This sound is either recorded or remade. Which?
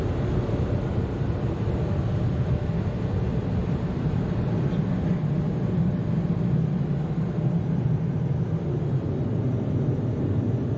recorded